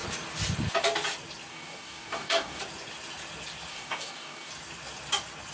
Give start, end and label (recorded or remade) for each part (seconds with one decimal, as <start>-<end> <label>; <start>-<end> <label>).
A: 0.0-1.5 recorded; 1.5-2.6 remade; 2.6-3.7 recorded; 3.7-4.5 remade; 4.5-5.5 recorded